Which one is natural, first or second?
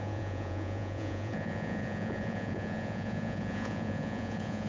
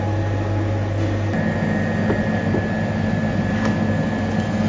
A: second